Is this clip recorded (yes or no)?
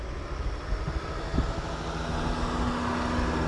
yes